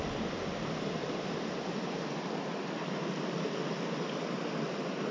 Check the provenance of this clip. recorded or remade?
recorded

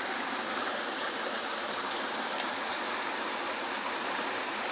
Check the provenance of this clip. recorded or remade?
recorded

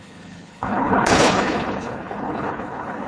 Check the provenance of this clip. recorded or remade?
remade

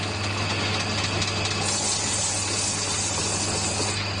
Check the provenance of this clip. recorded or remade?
recorded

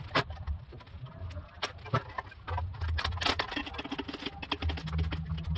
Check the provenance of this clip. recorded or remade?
recorded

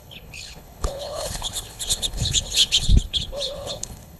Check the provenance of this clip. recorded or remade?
remade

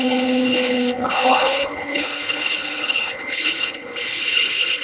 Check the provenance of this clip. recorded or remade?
remade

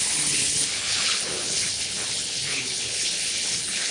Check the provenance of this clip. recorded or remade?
remade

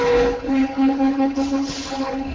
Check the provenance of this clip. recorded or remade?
remade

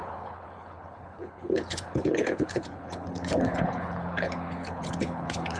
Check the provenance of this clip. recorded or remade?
remade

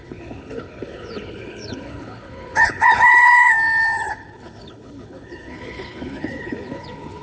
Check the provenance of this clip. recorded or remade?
remade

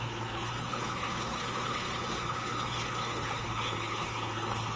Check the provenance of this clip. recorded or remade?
remade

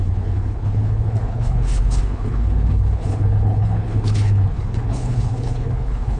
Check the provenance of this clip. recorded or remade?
remade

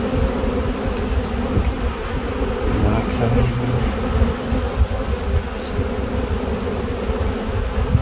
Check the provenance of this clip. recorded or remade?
recorded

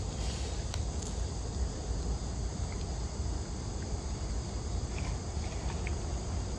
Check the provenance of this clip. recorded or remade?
recorded